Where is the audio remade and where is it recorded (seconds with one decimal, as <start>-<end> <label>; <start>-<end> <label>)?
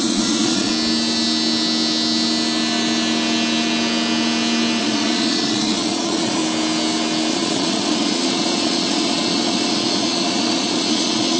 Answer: 0.0-0.7 remade; 0.7-4.8 recorded; 4.8-6.4 remade; 6.4-7.3 recorded; 7.3-11.4 remade